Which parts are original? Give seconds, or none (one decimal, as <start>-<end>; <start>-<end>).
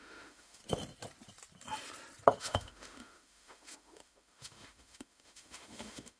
0.6-2.4